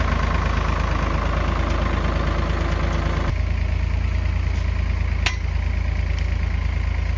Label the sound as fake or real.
real